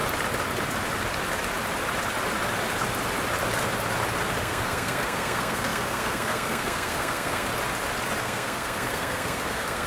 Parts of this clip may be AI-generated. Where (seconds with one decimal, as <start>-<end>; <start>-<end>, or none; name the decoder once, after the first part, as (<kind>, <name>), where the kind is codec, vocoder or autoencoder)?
4.4-7.5 (codec, SNAC); 8.2-9.9